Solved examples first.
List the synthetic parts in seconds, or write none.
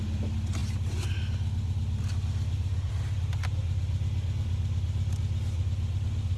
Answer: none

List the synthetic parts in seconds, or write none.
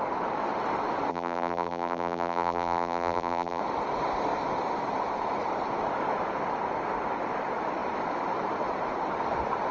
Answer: 1.1-3.6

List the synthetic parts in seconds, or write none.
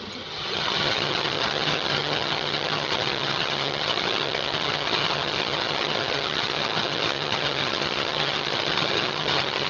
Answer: 0.0-9.7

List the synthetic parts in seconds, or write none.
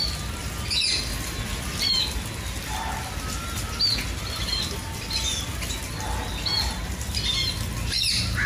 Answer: none